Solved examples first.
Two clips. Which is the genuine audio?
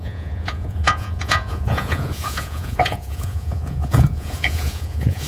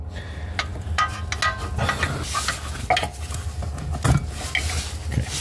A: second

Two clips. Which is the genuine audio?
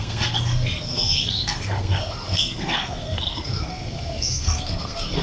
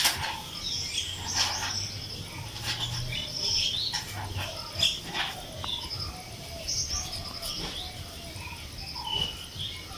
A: second